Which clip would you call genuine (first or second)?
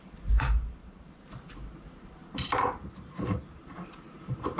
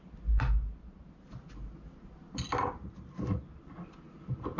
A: second